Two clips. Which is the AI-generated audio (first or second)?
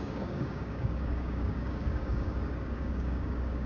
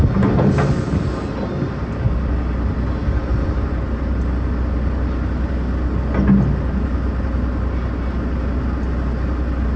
first